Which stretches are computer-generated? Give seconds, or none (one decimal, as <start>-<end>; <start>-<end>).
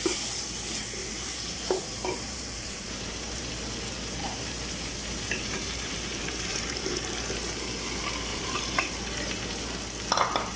1.0-3.5; 4.2-7.2; 8.3-8.8